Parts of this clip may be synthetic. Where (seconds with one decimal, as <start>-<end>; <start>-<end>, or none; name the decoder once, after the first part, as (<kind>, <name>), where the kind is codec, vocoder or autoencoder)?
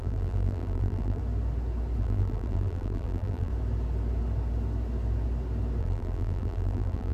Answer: 0.0-1.2 (vocoder, BigVGAN v2); 2.0-3.5; 5.8-7.1